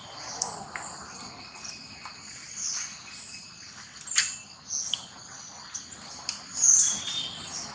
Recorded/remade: recorded